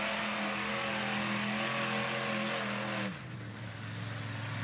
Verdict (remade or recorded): recorded